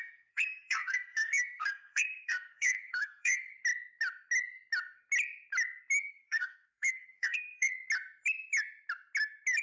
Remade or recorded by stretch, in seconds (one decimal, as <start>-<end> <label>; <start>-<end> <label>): 0.0-3.5 remade; 3.5-6.1 recorded; 6.1-7.7 remade; 7.7-9.6 recorded